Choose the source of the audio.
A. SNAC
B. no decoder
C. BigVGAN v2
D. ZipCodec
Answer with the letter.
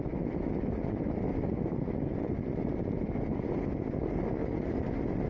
B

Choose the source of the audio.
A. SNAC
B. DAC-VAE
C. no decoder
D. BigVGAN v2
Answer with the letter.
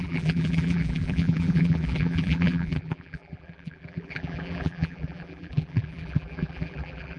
D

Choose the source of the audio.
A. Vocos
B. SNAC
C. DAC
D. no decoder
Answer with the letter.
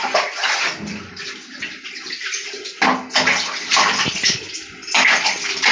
D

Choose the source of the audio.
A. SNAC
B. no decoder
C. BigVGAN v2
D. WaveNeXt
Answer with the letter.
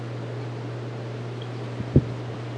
B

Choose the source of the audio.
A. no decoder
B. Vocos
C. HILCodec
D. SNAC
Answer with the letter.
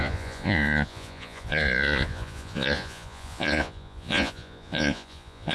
B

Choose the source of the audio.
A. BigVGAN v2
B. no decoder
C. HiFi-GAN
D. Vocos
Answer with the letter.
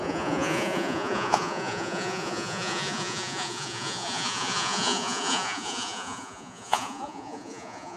D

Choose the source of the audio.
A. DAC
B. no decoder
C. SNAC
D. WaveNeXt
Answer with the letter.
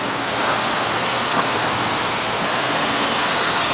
C